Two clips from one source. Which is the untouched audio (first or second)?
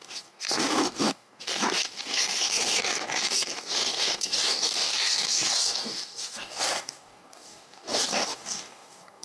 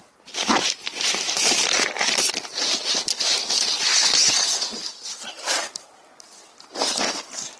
second